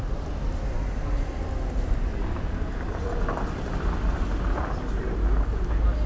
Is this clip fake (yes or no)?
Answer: no